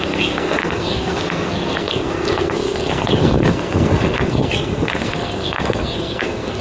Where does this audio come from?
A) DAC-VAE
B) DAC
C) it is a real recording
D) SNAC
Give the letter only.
D